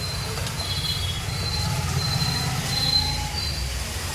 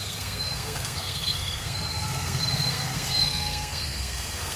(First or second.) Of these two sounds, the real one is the first